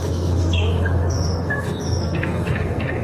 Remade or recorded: remade